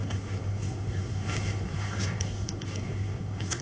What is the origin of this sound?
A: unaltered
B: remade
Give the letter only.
B